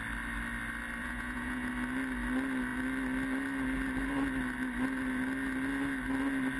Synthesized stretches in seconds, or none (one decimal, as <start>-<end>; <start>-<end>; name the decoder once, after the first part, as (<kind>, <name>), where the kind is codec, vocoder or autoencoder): 1.0-1.7 (vocoder, Vocos)